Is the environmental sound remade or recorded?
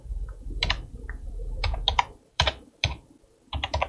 remade